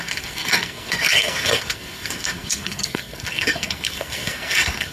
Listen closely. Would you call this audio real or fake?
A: fake